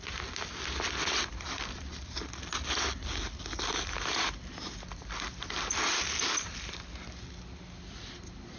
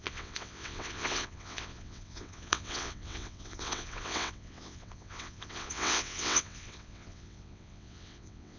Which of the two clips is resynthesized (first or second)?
second